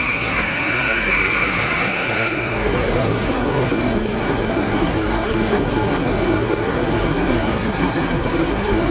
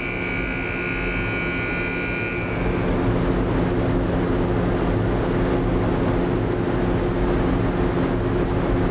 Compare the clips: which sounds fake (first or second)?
first